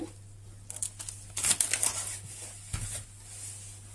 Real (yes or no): yes